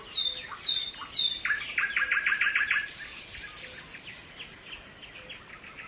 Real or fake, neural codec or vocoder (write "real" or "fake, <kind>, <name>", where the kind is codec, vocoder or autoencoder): real